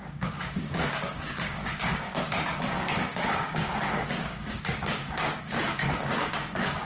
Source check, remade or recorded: remade